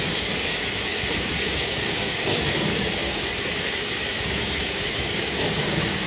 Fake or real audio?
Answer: fake